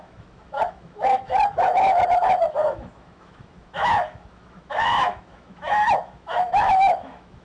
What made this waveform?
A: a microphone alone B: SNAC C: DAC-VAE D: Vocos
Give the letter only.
C